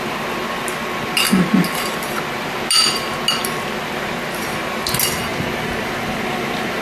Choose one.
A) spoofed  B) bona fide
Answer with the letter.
B